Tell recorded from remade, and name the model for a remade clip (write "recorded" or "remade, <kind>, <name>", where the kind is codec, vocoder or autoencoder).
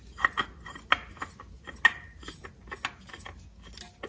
recorded